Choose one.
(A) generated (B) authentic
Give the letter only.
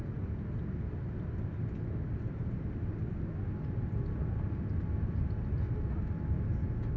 B